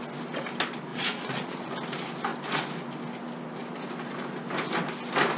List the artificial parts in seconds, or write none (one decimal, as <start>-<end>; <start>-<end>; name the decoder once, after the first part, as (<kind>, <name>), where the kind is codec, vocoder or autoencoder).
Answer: 0.9-1.7 (vocoder, Vocos)